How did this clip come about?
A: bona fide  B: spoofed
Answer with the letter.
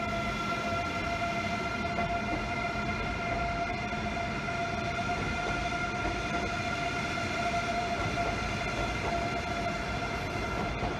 A